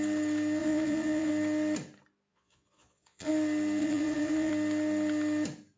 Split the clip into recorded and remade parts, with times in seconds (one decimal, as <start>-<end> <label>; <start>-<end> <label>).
0.0-0.6 recorded; 0.6-1.3 remade; 1.3-2.3 recorded; 2.3-3.3 remade; 3.3-3.8 recorded; 3.8-4.5 remade; 4.5-5.8 recorded